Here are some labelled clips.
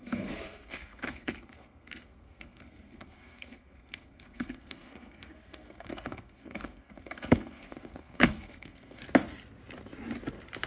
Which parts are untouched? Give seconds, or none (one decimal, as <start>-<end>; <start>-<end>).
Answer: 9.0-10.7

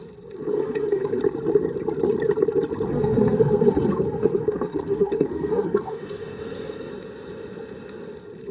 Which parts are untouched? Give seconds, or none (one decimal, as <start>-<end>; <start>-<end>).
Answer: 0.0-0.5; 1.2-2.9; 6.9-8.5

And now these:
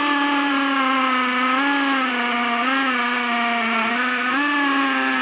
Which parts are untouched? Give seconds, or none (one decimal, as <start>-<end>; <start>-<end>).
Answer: 0.0-5.2